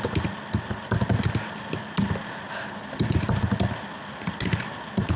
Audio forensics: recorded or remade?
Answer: recorded